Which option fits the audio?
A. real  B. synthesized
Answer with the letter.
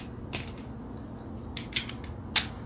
A